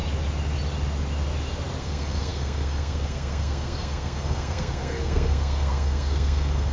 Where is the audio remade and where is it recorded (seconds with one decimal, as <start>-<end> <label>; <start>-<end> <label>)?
0.0-1.8 recorded; 1.8-6.7 remade